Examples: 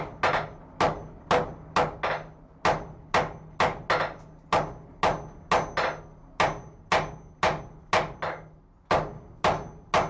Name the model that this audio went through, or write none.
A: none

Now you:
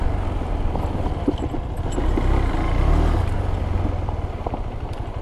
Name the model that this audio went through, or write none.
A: none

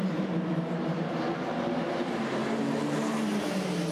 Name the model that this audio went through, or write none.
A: vocoder, BigVGAN v2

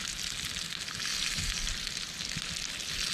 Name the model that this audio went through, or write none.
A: none